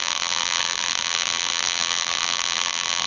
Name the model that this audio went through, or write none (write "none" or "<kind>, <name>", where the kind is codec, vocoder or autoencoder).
vocoder, BigVGAN v2